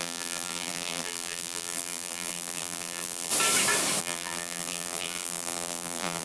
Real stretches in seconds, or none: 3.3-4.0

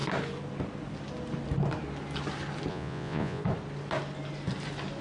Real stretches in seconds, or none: 0.0-2.7; 3.4-5.0

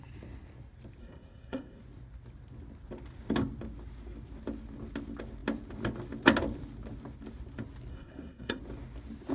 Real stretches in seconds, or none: 0.0-1.0; 1.8-7.9; 8.6-9.3

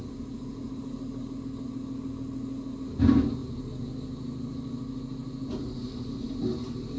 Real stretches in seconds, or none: 0.0-7.0

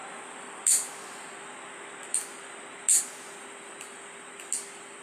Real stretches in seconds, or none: 0.0-5.0

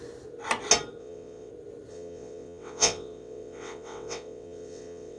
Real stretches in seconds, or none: 0.0-1.0; 1.5-1.9